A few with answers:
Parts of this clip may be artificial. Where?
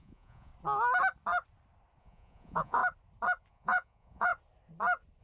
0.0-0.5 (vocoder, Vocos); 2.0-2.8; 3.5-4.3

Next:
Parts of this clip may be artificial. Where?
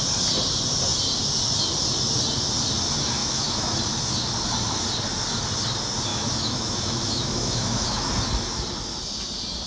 3.2-3.8 (autoencoder, DAC-VAE); 6.1-8.1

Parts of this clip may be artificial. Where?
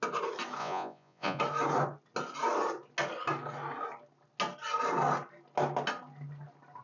0.6-1.4 (vocoder, Vocos)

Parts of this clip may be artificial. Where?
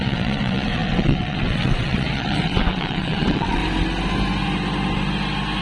0.0-3.6 (vocoder, WaveNeXt)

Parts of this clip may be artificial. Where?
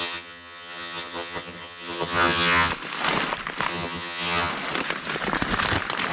0.0-2.7 (vocoder, HiFi-GAN); 3.7-4.5